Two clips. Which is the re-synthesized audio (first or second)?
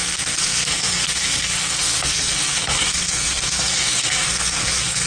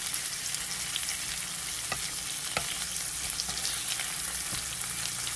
first